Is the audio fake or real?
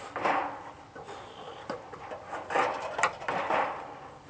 real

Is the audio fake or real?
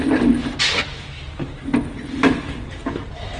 real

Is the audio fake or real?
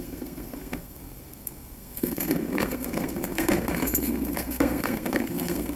fake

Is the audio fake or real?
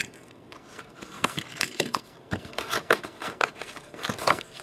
fake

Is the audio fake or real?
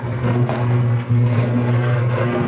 fake